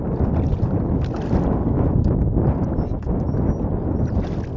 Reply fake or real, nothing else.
real